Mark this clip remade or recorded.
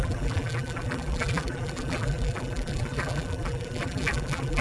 remade